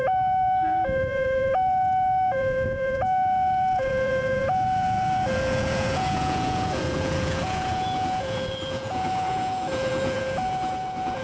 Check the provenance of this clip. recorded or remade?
remade